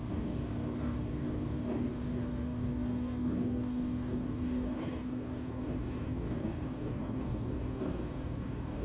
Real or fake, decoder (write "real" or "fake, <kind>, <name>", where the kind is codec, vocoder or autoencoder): fake, codec, DAC